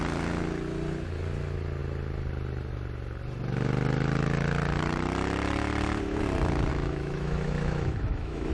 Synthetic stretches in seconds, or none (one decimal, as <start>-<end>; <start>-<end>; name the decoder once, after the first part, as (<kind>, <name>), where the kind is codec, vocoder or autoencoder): 6.7-8.5 (autoencoder, DAC-VAE)